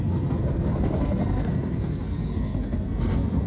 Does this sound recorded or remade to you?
remade